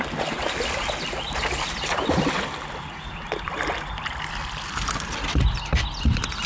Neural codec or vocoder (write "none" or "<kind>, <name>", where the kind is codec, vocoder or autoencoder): none